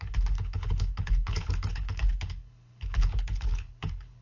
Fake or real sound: fake